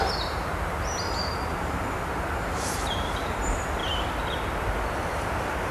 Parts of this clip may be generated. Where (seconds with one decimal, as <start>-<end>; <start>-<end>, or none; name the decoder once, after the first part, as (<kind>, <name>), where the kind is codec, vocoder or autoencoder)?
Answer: 0.0-3.8 (vocoder, BigVGAN v2)